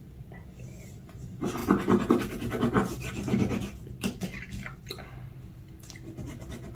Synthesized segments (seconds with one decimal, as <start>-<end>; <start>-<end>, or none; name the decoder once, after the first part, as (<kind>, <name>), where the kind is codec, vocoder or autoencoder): none